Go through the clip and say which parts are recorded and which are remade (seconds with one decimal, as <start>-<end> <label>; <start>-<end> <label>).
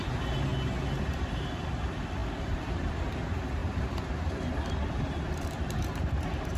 0.0-0.5 remade; 0.5-1.1 recorded; 1.1-6.6 remade